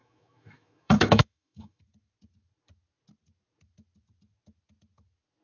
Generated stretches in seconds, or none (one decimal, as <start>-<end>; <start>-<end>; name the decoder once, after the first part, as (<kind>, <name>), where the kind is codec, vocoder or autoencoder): 0.0-1.8 (autoencoder, DAC-VAE)